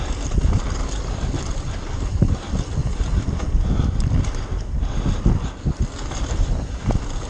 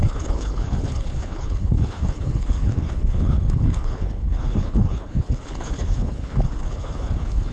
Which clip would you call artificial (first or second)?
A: second